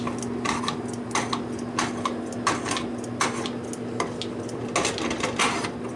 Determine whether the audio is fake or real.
real